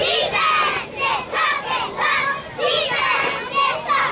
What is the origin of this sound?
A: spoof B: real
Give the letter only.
B